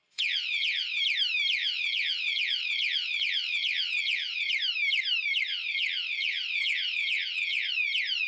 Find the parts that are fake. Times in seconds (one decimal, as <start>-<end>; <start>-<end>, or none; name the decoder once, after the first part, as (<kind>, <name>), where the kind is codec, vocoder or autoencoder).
0.0-1.0 (vocoder, WaveNeXt); 1.6-4.5; 5.5-7.7